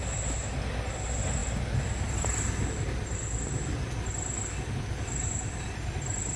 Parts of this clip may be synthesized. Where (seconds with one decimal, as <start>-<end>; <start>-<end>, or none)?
none